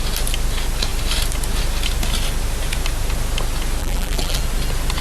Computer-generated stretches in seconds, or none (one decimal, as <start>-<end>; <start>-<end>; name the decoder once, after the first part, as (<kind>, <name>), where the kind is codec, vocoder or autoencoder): 3.8-4.4 (vocoder, BigVGAN v2)